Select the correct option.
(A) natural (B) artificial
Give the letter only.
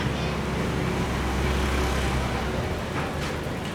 A